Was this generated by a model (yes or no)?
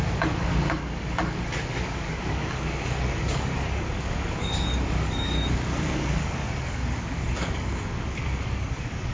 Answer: yes